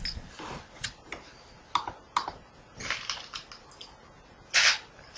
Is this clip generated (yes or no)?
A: no